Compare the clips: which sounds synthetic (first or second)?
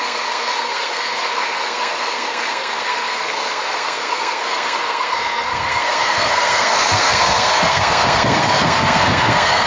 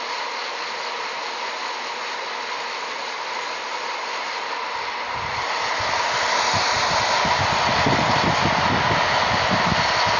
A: first